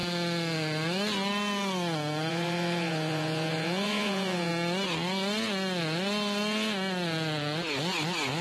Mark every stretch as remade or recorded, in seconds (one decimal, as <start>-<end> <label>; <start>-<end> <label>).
0.0-2.3 recorded; 2.3-4.5 remade; 4.5-8.4 recorded